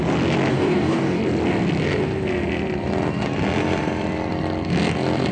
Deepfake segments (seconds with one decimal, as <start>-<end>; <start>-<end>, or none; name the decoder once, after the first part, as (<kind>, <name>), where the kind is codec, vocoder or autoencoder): 0.5-1.2 (codec, DAC)